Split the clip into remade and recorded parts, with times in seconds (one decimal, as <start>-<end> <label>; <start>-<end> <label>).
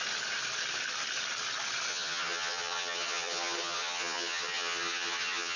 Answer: 0.0-1.9 recorded; 1.9-5.6 remade